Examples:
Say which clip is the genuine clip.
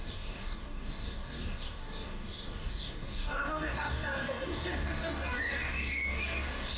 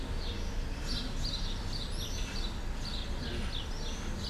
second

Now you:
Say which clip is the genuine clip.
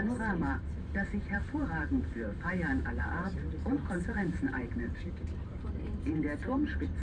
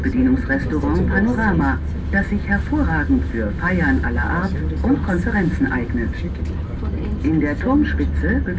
second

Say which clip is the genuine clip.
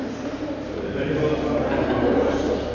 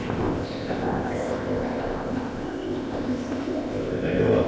first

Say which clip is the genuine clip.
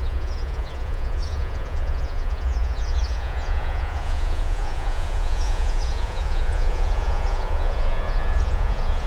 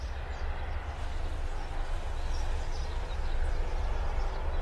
second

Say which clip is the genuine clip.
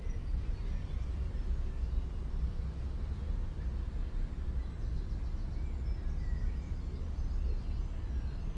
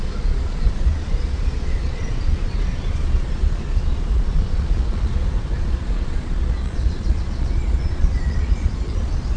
first